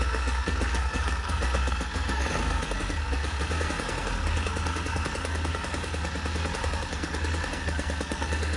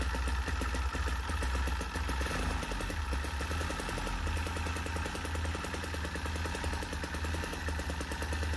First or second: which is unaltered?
second